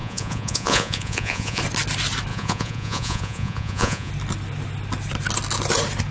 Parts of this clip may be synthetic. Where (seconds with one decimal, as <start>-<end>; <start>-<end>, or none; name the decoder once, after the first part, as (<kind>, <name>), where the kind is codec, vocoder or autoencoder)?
0.0-1.6 (vocoder, Vocos); 2.3-4.1